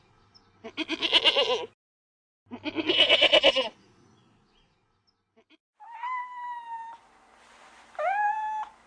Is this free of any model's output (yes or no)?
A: yes